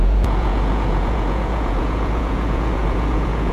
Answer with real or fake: fake